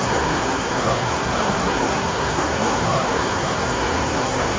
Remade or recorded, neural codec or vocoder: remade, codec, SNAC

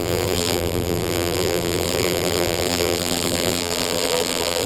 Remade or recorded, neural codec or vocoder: remade, vocoder, BigVGAN v2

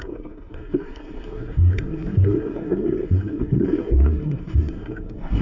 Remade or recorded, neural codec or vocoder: remade, codec, SNAC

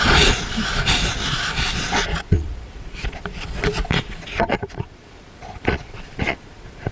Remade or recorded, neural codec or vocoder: remade, vocoder, Vocos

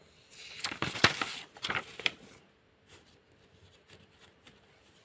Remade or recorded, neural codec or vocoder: recorded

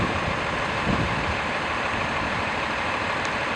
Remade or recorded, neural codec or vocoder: remade, vocoder, BigVGAN v2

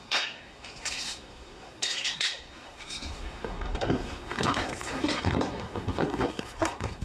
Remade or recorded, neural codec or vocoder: remade, codec, SNAC